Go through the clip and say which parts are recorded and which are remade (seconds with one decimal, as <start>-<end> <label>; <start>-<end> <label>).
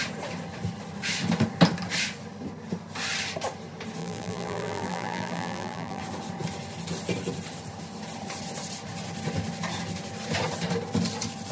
0.0-4.0 recorded; 4.0-6.0 remade; 6.0-11.5 recorded